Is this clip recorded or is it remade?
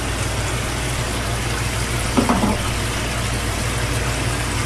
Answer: recorded